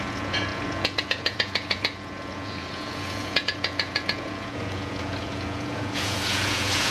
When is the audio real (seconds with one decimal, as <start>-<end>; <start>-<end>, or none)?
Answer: none